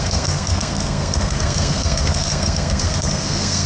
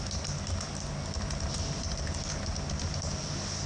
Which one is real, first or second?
second